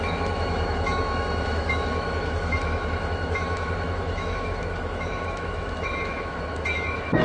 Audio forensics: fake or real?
fake